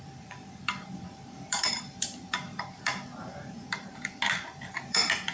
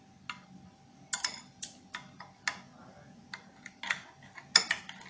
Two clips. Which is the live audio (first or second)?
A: second